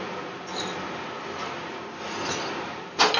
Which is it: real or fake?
real